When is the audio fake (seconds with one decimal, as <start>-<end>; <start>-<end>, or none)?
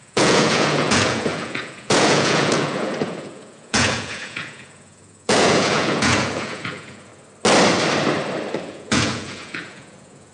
0.0-7.1; 8.6-10.3